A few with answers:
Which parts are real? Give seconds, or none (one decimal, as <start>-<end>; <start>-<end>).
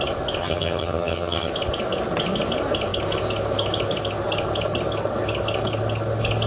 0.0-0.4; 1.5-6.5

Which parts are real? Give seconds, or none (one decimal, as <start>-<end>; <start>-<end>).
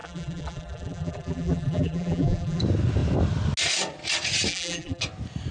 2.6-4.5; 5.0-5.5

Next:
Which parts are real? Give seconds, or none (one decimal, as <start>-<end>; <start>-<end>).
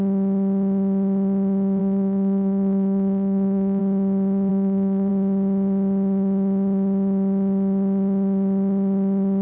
0.0-1.8; 3.8-4.5; 5.1-9.4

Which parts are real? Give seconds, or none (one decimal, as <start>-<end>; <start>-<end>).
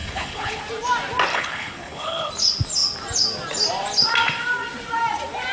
0.6-1.3; 2.3-5.5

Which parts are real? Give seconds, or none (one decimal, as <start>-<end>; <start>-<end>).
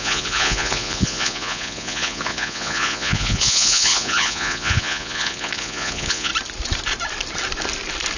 6.3-8.2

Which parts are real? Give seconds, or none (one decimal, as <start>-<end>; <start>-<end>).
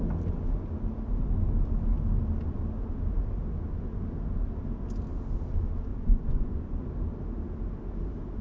0.0-5.9; 6.8-8.4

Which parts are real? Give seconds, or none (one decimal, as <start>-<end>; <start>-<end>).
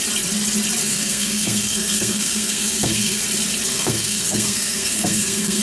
0.0-0.8; 3.2-3.7